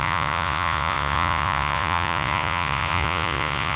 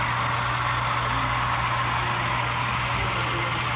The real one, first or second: second